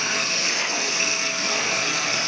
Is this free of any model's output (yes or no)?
no